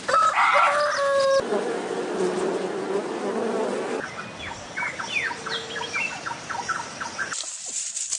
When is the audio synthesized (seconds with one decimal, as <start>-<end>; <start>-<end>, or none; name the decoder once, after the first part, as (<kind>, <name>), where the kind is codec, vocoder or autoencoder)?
0.0-0.5 (vocoder, BigVGAN v2); 4.9-8.2